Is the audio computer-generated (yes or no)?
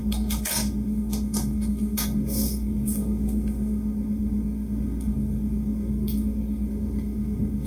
yes